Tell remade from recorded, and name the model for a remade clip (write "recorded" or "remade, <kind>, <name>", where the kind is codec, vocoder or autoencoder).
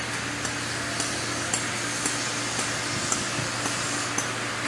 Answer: recorded